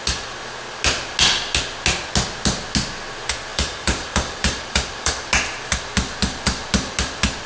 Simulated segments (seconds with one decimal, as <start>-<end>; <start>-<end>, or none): 3.5-5.1